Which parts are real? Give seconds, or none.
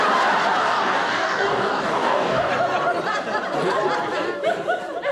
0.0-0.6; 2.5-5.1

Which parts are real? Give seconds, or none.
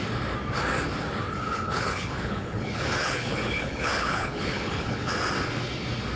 0.0-1.4; 5.1-6.2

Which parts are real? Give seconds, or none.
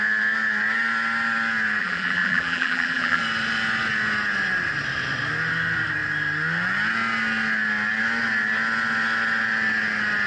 0.0-1.8; 3.2-10.3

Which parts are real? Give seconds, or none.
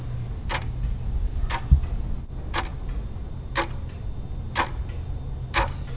0.0-6.0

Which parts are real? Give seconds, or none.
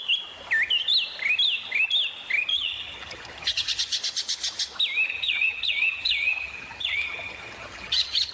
0.0-2.5; 4.0-5.1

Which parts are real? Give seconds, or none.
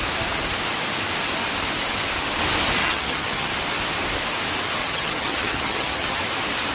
0.0-2.8; 3.5-4.8; 6.2-6.7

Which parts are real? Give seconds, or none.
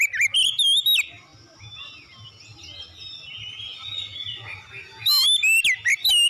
0.0-6.3